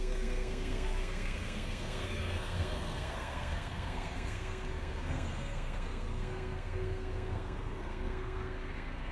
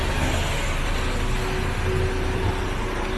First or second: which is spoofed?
first